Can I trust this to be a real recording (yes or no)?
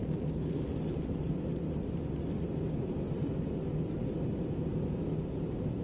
yes